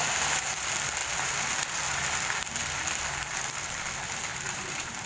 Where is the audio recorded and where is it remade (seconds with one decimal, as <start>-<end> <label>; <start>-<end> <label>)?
0.0-4.3 recorded; 4.3-5.1 remade